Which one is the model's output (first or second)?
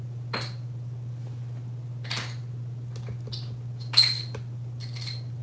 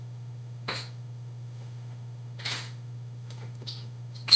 second